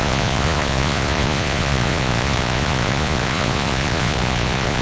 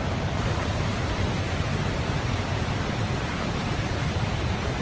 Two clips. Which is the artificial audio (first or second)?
first